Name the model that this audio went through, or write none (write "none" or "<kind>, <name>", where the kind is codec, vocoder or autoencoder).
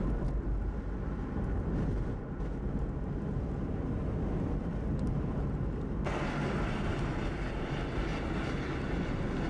none